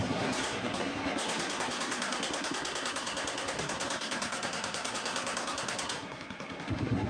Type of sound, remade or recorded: remade